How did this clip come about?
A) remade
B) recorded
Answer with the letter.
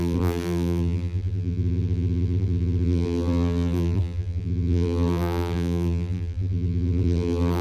A